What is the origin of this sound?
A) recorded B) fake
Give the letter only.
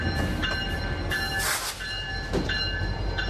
A